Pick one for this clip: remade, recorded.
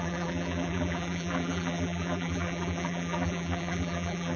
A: remade